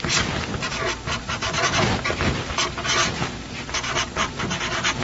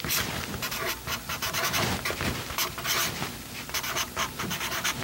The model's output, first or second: second